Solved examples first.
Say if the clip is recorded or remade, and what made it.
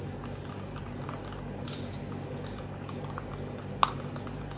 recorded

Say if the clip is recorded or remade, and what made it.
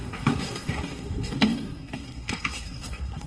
remade, codec, SNAC